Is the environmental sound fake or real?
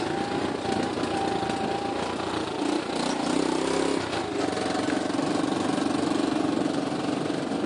real